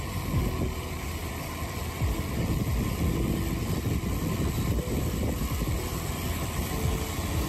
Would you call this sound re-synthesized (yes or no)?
no